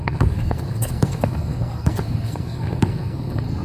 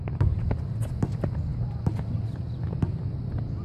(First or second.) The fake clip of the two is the first